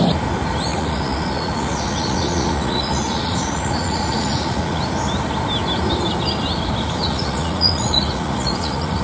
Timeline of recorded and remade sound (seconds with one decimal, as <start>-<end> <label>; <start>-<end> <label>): 0.0-0.7 recorded; 0.7-4.8 remade; 4.8-7.0 recorded; 7.0-9.0 remade